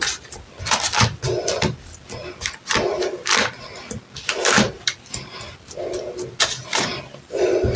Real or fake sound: real